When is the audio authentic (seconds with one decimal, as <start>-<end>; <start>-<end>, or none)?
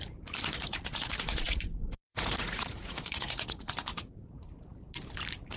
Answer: 0.0-0.7; 4.1-5.6